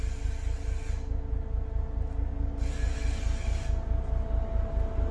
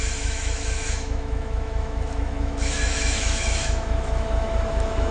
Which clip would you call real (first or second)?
first